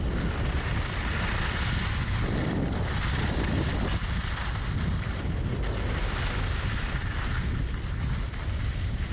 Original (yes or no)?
yes